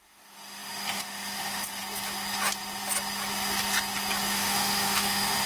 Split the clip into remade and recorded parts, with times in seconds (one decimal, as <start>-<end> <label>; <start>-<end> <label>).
0.0-1.8 remade; 1.8-4.3 recorded; 4.3-5.5 remade